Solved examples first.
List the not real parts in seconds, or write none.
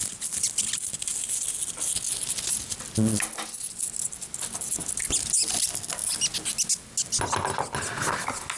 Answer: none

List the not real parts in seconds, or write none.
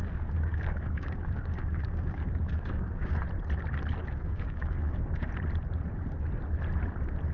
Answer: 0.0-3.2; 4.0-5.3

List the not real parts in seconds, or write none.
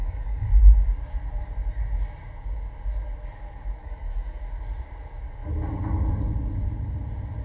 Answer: 0.0-0.5; 3.8-4.4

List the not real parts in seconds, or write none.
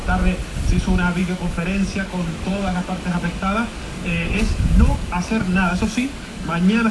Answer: 1.2-2.1; 2.5-6.9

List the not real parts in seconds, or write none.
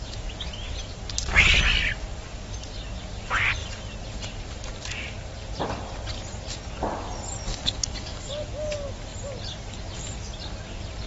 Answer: 7.5-8.3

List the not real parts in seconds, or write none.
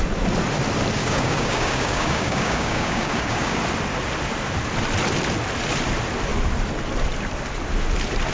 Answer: 1.0-3.6